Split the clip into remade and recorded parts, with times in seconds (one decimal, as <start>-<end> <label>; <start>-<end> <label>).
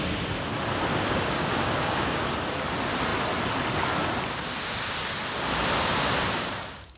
0.0-0.9 recorded; 0.9-2.2 remade; 2.2-7.0 recorded